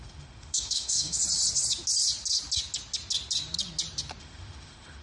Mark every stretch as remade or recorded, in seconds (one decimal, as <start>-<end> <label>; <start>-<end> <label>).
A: 0.0-1.2 remade; 1.2-4.2 recorded; 4.2-5.0 remade